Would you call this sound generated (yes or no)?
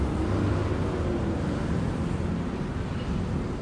no